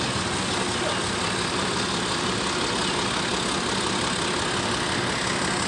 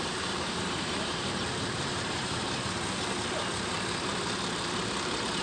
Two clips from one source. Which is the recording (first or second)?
first